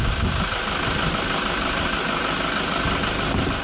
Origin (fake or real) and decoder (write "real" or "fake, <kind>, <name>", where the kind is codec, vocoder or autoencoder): real